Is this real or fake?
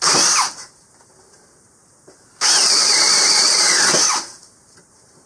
fake